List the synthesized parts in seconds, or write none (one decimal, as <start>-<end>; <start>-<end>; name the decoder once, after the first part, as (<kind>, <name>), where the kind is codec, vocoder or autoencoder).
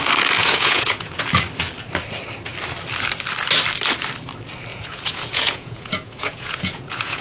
0.4-1.2 (vocoder, Vocos); 4.7-7.2